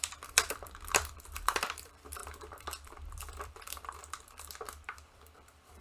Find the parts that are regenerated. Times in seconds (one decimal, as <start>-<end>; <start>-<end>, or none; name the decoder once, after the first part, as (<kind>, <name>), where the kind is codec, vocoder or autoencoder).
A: 0.0-5.8 (vocoder, BigVGAN v2)